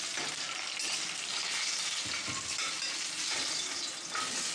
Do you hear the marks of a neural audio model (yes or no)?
no